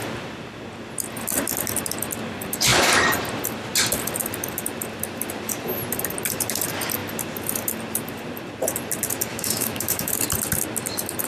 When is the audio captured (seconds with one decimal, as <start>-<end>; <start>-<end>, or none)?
0.0-9.3; 10.1-11.3

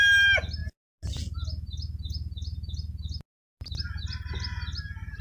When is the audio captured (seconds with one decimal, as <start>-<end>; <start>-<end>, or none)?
0.0-5.2